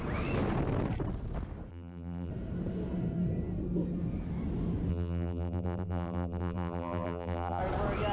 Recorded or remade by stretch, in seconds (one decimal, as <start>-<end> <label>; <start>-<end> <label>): 0.0-1.7 recorded; 1.7-2.3 remade; 2.3-4.9 recorded; 4.9-7.6 remade; 7.6-8.1 recorded